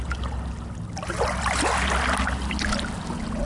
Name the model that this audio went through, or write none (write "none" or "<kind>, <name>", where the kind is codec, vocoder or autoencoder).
none